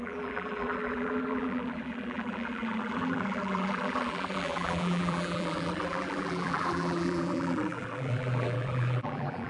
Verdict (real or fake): fake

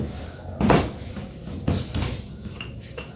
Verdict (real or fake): real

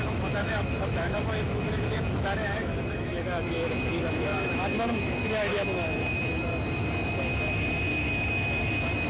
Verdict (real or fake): fake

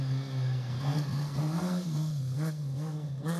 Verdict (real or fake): fake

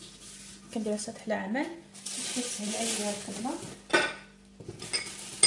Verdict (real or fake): real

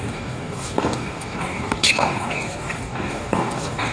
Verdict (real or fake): fake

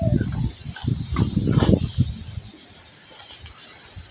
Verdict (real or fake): real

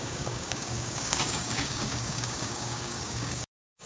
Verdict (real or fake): fake